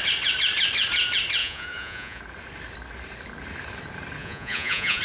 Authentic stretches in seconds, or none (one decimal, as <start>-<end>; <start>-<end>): 0.0-1.4; 2.2-4.2